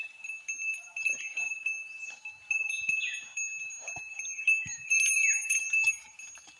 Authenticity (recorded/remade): recorded